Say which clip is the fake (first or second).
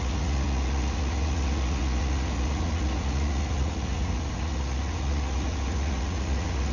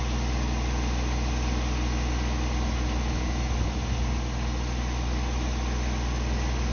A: first